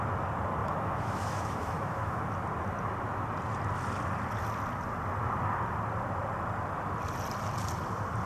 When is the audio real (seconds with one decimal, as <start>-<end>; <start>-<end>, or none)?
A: 0.0-0.6; 2.2-8.3